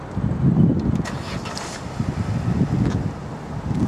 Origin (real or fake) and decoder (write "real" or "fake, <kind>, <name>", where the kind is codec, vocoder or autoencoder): real